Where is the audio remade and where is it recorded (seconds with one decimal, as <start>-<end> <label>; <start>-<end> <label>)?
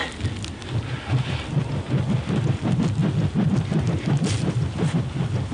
0.0-5.5 recorded